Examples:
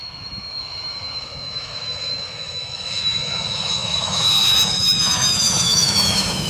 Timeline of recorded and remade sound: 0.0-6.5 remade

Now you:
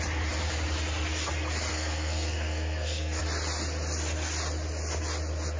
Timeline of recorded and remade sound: 0.0-1.7 recorded; 1.7-3.2 remade; 3.2-5.6 recorded

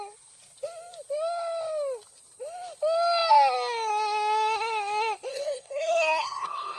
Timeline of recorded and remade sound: 0.0-5.3 recorded; 5.3-6.8 remade

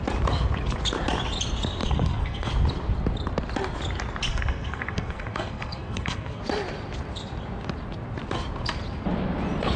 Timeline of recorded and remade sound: 0.0-1.8 recorded; 1.8-2.5 remade; 2.5-4.3 recorded; 4.3-6.4 remade; 6.4-9.8 recorded

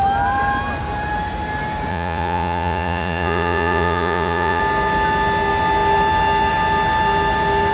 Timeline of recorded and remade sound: 0.0-1.9 recorded; 1.9-4.6 remade; 4.6-7.7 recorded

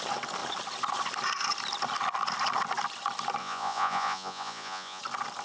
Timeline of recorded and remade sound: 0.0-3.4 recorded; 3.4-5.0 remade; 5.0-5.4 recorded

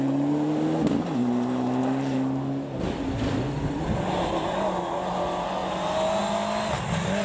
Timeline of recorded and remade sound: 0.0-7.2 recorded